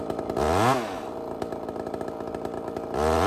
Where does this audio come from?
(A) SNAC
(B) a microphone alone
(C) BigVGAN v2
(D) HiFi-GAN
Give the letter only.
B